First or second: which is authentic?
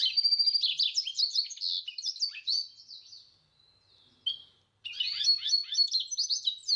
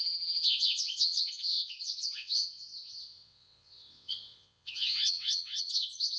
first